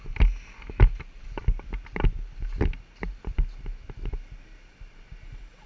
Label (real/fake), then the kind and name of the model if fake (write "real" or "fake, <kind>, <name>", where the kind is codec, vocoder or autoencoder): real